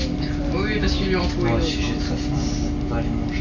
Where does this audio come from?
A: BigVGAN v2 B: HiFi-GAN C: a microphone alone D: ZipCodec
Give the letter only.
C